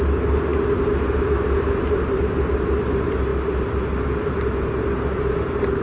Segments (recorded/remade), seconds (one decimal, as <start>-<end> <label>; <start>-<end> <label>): 0.0-5.8 recorded